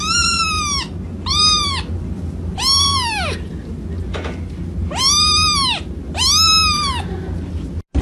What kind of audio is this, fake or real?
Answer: real